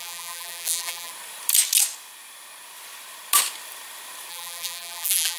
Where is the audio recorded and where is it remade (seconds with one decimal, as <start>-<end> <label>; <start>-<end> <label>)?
0.0-1.1 remade; 1.1-4.3 recorded; 4.3-5.4 remade